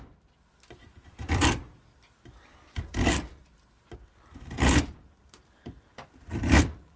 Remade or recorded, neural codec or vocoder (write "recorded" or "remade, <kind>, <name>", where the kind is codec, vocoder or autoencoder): recorded